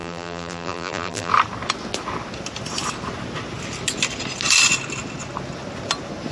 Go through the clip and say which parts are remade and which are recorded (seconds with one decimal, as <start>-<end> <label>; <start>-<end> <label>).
0.0-1.3 remade; 1.3-6.3 recorded